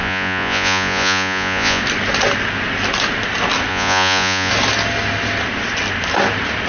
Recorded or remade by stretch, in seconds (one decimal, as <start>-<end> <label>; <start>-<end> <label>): 0.0-1.8 remade; 1.8-3.7 recorded; 3.7-4.5 remade; 4.5-6.7 recorded